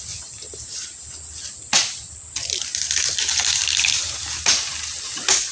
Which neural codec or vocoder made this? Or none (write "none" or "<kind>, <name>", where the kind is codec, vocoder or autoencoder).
none